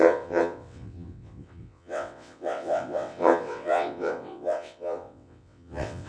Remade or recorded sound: remade